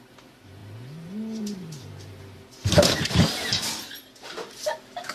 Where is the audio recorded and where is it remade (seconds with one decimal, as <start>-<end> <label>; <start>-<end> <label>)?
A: 0.0-5.1 recorded